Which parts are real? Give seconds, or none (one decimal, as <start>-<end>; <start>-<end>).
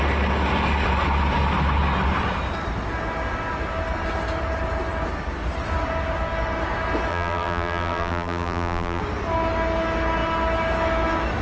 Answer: 0.0-7.1; 9.0-11.4